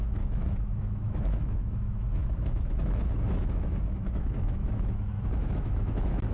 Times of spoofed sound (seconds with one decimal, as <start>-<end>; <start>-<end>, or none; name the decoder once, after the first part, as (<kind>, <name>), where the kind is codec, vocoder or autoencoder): 0.0-6.3 (autoencoder, DAC-VAE)